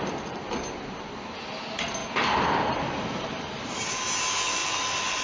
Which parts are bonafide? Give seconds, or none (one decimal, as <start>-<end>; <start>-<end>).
0.0-0.4; 1.1-2.0; 3.8-5.2

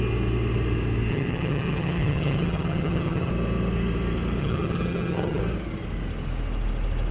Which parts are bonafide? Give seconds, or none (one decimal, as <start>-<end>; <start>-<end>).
0.0-1.1; 3.3-4.4; 5.4-7.1

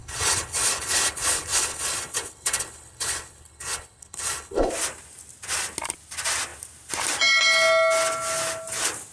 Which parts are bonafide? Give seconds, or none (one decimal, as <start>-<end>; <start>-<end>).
4.7-9.1

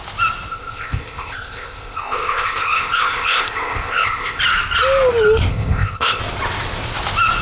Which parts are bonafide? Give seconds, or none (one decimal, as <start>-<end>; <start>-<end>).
0.0-0.5; 4.4-5.5; 6.2-7.4

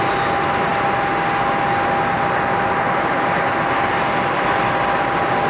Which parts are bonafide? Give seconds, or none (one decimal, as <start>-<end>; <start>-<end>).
0.0-5.5

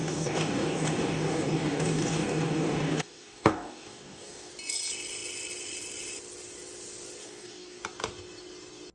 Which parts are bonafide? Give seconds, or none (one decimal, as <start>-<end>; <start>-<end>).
4.5-7.2; 7.8-8.9

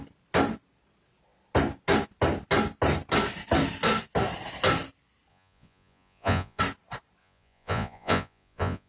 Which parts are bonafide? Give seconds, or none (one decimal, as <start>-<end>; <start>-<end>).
0.0-5.3; 6.6-7.2

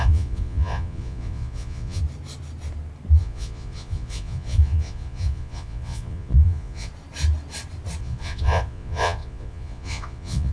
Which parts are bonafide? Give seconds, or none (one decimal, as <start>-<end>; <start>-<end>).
2.0-3.2; 6.9-8.0